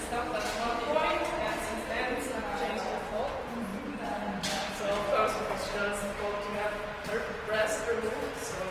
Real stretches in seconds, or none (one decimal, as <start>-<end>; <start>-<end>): 0.0-8.7